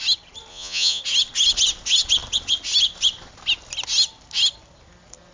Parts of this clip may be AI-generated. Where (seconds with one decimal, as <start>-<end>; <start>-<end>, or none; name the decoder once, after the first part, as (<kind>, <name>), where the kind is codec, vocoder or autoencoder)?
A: 0.5-1.0 (vocoder, Vocos)